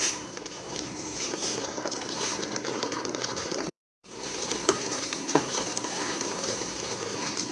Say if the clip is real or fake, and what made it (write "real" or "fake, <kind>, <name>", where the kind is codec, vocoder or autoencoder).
fake, codec, SNAC